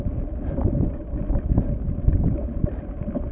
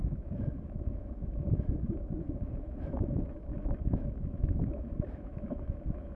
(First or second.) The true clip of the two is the first